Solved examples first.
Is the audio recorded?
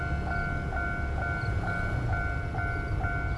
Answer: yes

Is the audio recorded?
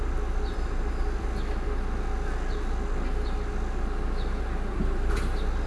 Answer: yes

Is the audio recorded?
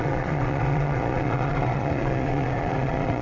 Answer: no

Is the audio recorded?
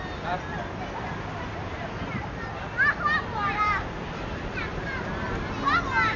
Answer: yes